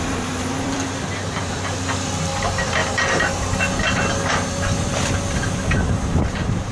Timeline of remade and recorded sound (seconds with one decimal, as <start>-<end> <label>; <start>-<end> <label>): 0.0-2.8 remade; 2.8-4.3 recorded; 4.3-6.7 remade